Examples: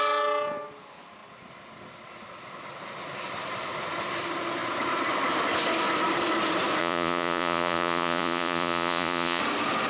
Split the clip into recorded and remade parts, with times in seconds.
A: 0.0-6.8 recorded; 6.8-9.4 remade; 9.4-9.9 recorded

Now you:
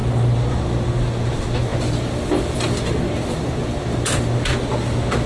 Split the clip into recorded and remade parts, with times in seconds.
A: 0.0-5.3 recorded

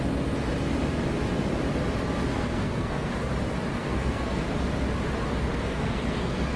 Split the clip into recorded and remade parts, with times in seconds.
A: 0.0-2.3 recorded; 2.3-3.1 remade; 3.1-3.8 recorded; 3.8-4.4 remade; 4.4-5.5 recorded; 5.5-6.6 remade

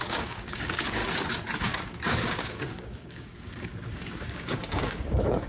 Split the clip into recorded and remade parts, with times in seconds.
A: 0.0-1.0 remade; 1.0-1.6 recorded; 1.6-5.5 remade

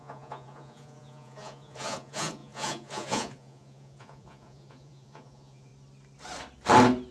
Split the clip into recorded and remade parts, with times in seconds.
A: 0.0-5.7 remade; 5.7-7.1 recorded